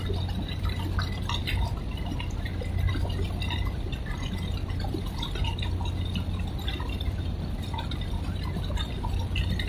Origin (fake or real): real